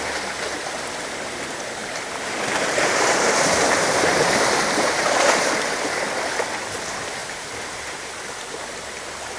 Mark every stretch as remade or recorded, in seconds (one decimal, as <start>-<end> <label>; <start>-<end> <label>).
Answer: 0.0-1.8 recorded; 1.8-5.5 remade; 5.5-7.2 recorded; 7.2-8.1 remade; 8.1-9.4 recorded